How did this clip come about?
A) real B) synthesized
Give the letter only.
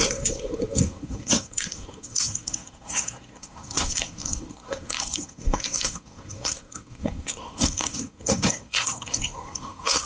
B